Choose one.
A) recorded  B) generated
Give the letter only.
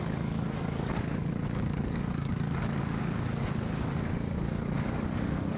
B